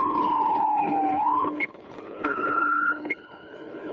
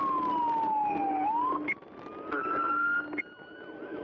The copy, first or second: first